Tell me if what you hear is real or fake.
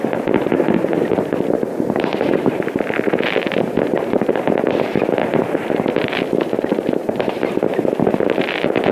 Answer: fake